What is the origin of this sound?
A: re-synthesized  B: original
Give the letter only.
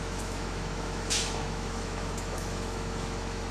A